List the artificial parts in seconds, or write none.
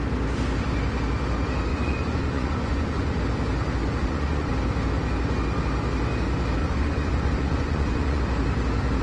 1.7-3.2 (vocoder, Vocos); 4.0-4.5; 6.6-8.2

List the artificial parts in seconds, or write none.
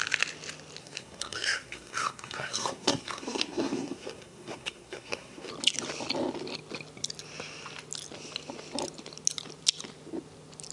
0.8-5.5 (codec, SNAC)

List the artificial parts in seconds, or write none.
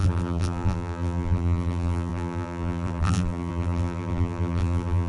0.0-5.1 (vocoder, BigVGAN v2)